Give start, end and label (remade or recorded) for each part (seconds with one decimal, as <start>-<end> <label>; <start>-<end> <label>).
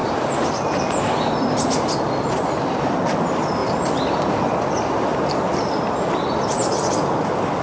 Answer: 0.0-7.6 recorded